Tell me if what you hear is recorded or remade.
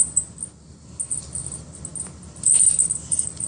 recorded